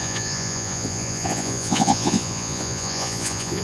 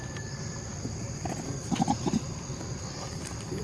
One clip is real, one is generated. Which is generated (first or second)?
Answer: first